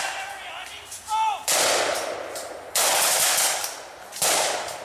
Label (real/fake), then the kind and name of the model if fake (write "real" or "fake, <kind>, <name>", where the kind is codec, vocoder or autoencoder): real